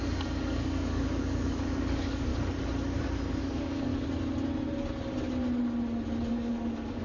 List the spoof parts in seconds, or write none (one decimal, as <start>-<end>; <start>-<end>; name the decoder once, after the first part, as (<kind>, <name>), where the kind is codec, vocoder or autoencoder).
0.0-2.3 (codec, DAC); 3.3-3.9; 6.3-7.0